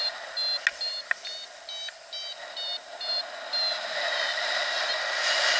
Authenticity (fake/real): real